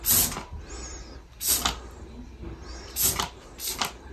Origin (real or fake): real